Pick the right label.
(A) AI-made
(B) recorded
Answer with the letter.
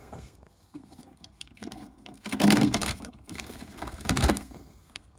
A